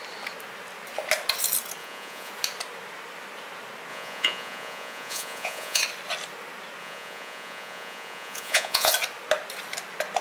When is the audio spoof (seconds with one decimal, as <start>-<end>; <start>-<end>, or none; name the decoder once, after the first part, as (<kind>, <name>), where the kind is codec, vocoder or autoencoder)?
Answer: 1.8-2.3 (vocoder, Vocos); 3.9-5.8; 6.8-8.9